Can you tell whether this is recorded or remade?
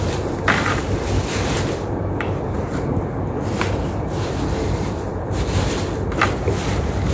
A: recorded